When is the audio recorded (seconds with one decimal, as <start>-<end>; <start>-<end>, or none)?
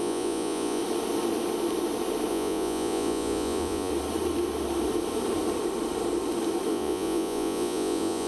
0.8-2.3; 3.9-6.7